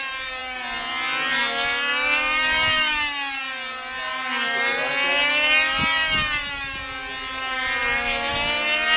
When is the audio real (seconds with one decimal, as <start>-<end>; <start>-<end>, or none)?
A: 0.0-9.0